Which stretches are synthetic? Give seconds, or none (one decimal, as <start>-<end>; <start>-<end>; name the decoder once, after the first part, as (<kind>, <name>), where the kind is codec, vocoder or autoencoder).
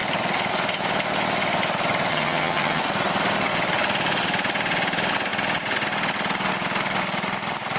2.1-2.8 (vocoder, HiFi-GAN)